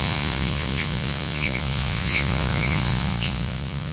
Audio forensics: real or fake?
fake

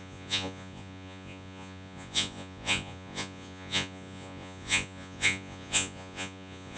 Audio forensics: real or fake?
fake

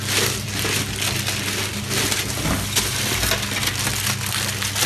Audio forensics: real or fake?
real